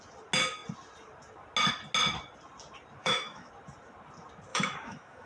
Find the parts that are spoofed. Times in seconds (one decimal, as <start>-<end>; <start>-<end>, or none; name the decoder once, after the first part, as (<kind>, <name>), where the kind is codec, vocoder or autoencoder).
3.0-3.5 (autoencoder, DAC-VAE); 4.5-5.3